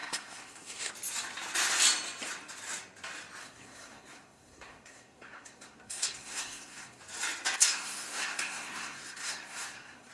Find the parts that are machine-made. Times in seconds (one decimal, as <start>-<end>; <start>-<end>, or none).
0.0-0.9; 3.4-7.0; 7.6-10.1